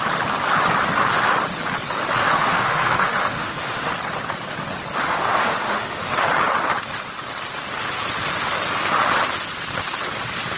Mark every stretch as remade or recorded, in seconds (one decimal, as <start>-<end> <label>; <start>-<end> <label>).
0.0-2.2 recorded; 2.2-3.9 remade; 3.9-5.0 recorded; 5.0-6.0 remade; 6.0-10.6 recorded